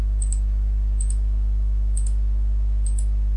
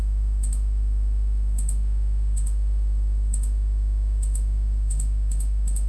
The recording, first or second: first